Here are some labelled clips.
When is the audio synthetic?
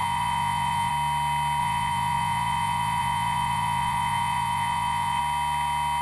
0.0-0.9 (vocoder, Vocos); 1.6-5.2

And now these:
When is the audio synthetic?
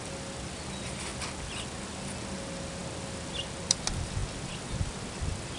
none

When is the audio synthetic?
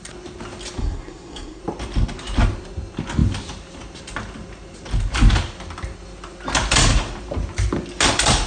0.8-1.6 (codec, SNAC)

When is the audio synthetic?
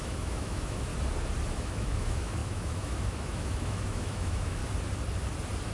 0.0-0.9 (autoencoder, DAC-VAE); 1.5-4.6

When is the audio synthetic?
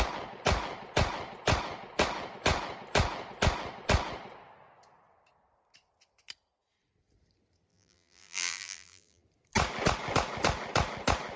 7.7-9.2 (vocoder, BigVGAN v2)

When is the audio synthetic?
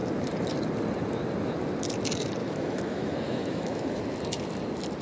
2.4-4.0 (autoencoder, DAC-VAE)